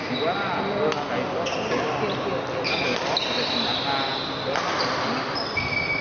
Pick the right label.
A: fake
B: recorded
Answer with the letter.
B